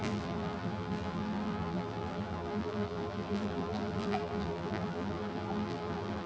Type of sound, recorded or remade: remade